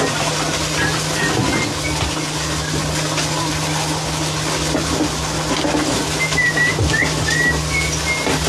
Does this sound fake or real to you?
real